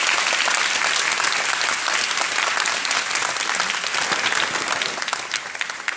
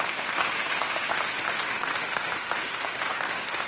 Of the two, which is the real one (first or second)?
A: first